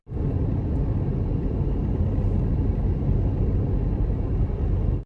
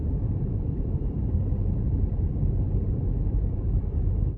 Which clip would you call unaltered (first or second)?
first